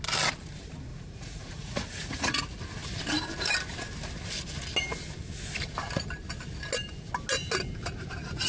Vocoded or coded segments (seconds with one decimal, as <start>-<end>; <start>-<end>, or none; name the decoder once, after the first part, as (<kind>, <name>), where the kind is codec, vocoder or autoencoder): 0.9-2.4 (vocoder, Vocos)